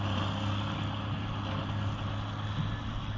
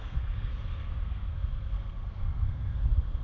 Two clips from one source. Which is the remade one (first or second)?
second